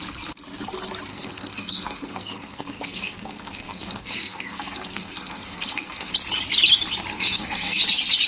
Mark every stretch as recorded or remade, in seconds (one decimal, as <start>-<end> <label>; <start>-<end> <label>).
0.0-1.1 recorded; 1.1-6.1 remade; 6.1-7.1 recorded; 7.1-7.8 remade; 7.8-8.3 recorded